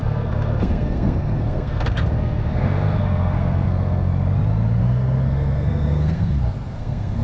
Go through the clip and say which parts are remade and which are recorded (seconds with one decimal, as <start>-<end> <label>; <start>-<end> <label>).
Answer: 0.0-4.1 remade; 4.1-4.8 recorded; 4.8-7.2 remade